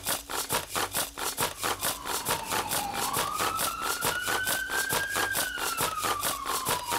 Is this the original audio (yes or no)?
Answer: yes